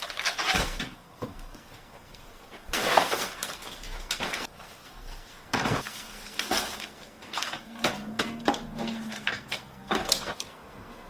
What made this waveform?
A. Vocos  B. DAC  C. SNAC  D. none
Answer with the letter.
C